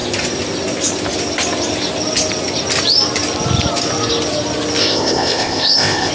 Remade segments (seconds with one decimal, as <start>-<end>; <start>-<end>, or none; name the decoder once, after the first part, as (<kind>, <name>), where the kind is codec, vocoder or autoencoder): 4.8-6.1 (codec, ZipCodec)